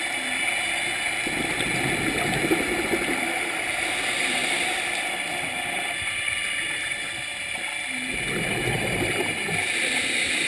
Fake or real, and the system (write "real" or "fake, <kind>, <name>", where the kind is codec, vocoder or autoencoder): real